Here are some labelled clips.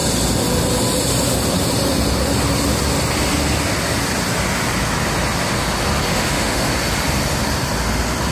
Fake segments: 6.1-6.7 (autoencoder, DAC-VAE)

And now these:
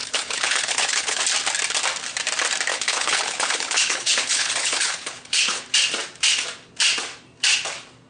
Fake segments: 0.0-1.2 (codec, HILCodec); 2.7-5.6

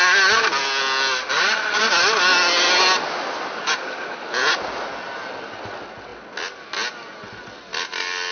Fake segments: none

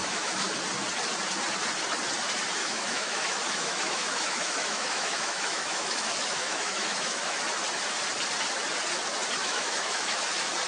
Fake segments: 0.0-0.5 (autoencoder, DAC-VAE); 2.6-7.4; 9.4-10.2

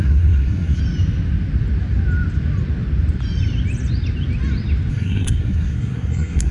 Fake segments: 0.0-0.8 (codec, SNAC); 4.9-6.5